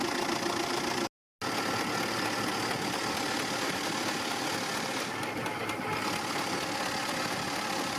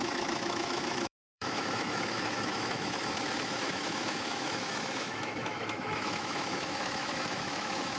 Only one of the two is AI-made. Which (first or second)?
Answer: second